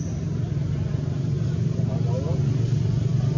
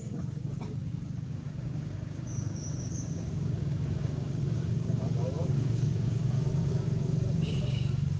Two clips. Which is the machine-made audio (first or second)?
second